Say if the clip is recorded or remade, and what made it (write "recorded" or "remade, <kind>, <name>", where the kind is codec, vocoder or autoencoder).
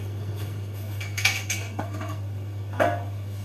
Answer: remade, codec, SNAC